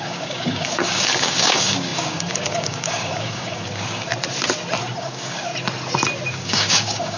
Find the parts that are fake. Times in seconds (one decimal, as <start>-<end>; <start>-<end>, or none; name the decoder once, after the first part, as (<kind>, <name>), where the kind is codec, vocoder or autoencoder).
0.0-4.1 (codec, DAC); 5.0-5.5; 6.3-7.2